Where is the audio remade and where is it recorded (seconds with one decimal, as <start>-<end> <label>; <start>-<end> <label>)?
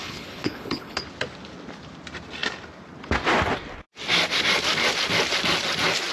0.0-1.0 remade; 1.0-6.1 recorded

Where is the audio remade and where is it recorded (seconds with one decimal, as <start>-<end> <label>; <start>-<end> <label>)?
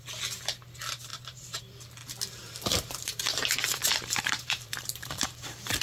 0.0-1.1 recorded; 1.1-1.6 remade; 1.6-2.0 recorded; 2.0-5.8 remade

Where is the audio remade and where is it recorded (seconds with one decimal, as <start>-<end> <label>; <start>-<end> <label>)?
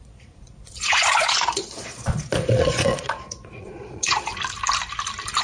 0.0-4.3 remade; 4.3-5.4 recorded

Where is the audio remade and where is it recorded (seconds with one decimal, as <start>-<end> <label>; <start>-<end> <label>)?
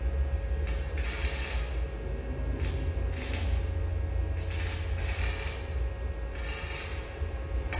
0.0-6.9 recorded; 6.9-7.8 remade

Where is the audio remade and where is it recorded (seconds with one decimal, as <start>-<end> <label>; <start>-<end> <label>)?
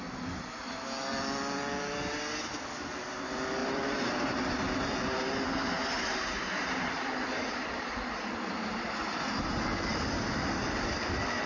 0.0-3.6 recorded; 3.6-8.1 remade; 8.1-11.5 recorded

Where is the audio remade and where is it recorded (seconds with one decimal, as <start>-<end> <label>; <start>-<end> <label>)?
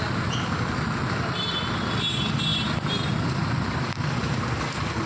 0.0-2.5 recorded; 2.5-4.6 remade; 4.6-5.1 recorded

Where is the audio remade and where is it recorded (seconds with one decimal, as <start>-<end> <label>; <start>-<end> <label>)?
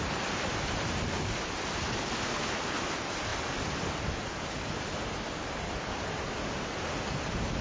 0.0-7.6 recorded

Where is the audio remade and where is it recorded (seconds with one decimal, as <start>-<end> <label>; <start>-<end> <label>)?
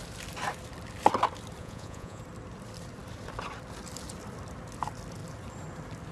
0.0-1.6 recorded; 1.6-2.2 remade; 2.2-6.1 recorded